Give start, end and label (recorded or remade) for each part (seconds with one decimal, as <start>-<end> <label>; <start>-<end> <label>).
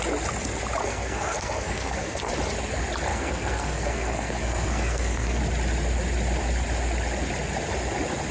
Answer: 0.0-0.8 recorded; 0.8-2.3 remade; 2.3-3.1 recorded; 3.1-5.4 remade; 5.4-8.3 recorded